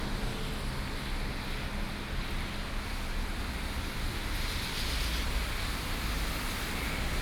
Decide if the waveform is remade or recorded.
recorded